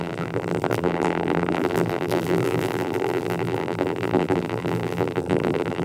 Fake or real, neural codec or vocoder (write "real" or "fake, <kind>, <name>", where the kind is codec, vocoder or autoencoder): fake, vocoder, BigVGAN v2